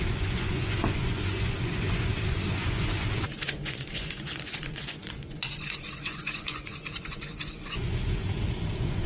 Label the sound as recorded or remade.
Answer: remade